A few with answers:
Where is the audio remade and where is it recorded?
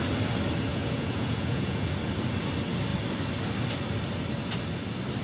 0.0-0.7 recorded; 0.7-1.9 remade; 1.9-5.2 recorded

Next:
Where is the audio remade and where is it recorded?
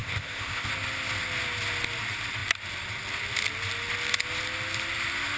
0.0-0.7 remade; 0.7-5.4 recorded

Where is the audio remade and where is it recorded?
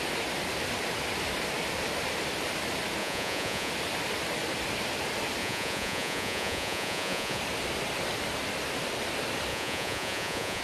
0.0-3.0 recorded; 3.0-3.7 remade; 3.7-5.4 recorded; 5.4-7.4 remade; 7.4-9.5 recorded; 9.5-10.6 remade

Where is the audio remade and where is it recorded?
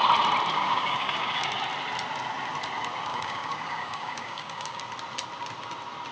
0.0-0.5 recorded; 0.5-1.5 remade; 1.5-3.1 recorded; 3.1-4.8 remade; 4.8-6.1 recorded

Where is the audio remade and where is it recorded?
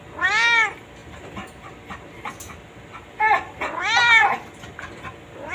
0.0-5.5 recorded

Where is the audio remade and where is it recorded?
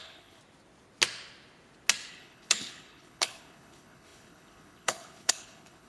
0.0-0.4 remade; 0.4-2.1 recorded; 2.1-5.9 remade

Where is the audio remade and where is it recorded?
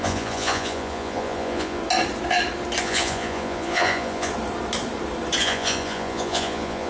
0.0-1.8 remade; 1.8-2.8 recorded; 2.8-4.3 remade; 4.3-5.4 recorded; 5.4-6.9 remade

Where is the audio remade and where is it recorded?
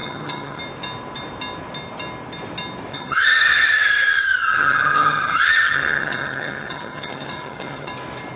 0.0-0.6 remade; 0.6-2.9 recorded; 2.9-7.9 remade; 7.9-8.4 recorded